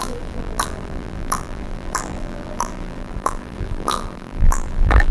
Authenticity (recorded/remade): remade